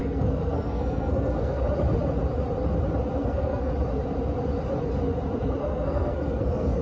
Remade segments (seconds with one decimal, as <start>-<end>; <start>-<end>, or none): 0.0-1.6; 3.2-3.7; 5.6-6.8